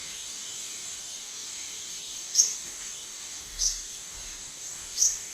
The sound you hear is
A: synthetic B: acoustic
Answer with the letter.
A